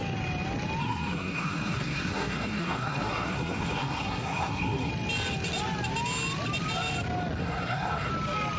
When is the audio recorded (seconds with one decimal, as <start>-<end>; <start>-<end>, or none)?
0.0-0.8; 4.9-7.4; 8.1-8.6